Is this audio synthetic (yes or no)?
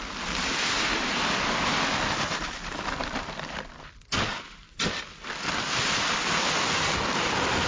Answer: no